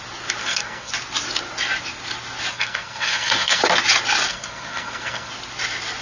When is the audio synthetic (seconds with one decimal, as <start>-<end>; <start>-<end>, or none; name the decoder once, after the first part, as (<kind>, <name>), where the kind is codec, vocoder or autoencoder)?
0.4-0.9 (codec, SNAC); 2.5-3.6; 4.3-5.3